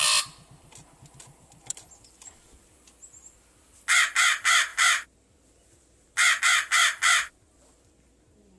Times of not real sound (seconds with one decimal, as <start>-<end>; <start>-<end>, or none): none